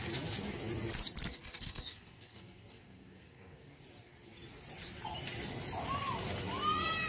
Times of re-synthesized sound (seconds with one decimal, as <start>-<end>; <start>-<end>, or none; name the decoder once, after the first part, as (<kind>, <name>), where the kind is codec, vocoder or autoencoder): 1.3-3.8 (codec, SNAC)